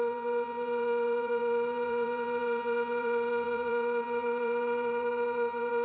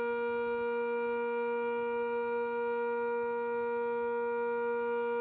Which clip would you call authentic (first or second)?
second